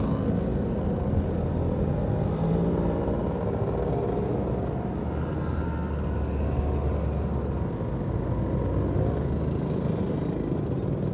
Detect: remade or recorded recorded